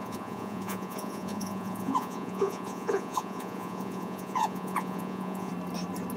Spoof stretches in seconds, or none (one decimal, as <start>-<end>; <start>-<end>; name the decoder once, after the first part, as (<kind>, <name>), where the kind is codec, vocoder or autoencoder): 0.0-5.5 (vocoder, Vocos)